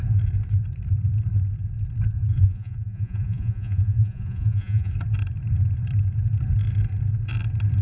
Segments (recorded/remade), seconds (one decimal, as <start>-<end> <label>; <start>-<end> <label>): 0.0-2.3 recorded; 2.3-4.9 remade; 4.9-7.8 recorded